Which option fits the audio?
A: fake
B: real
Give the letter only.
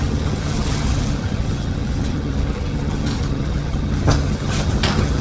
A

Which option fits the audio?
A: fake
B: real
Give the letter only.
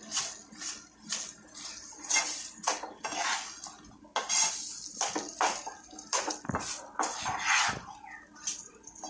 B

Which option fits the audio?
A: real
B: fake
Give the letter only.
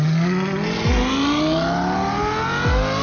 A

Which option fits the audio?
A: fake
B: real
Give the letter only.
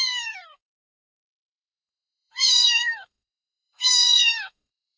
A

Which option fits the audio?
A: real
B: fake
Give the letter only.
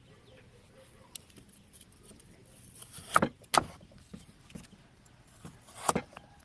A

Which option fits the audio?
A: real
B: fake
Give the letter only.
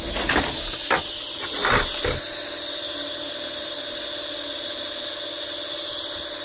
A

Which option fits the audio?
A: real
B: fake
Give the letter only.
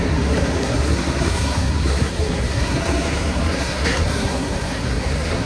B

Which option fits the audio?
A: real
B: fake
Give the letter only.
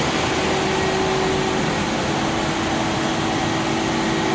A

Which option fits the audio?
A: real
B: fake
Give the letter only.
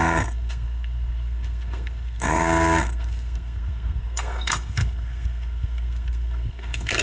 B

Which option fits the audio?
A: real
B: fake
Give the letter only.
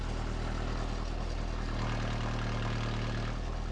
A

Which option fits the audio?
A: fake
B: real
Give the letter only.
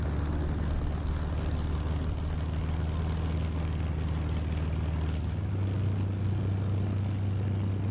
B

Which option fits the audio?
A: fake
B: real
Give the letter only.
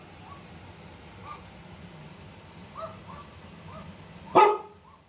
B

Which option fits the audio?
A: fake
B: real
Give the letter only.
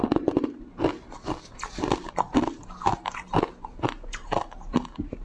B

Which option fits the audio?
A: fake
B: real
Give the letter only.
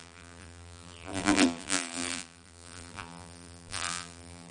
A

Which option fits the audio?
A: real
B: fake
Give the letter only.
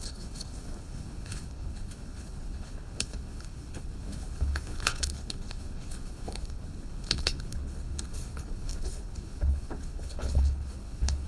B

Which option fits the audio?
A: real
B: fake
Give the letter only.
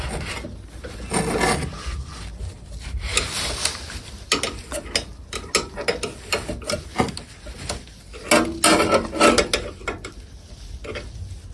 A